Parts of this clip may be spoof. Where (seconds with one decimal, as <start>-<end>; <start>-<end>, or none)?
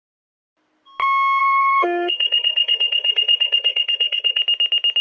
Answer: 1.4-4.4